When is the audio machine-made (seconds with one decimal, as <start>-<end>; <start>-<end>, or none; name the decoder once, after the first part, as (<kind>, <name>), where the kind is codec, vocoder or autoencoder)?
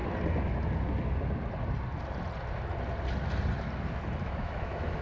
4.2-5.0 (autoencoder, DAC-VAE)